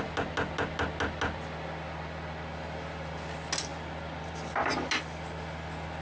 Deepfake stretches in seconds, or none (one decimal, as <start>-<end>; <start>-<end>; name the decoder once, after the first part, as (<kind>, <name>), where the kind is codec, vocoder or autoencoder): none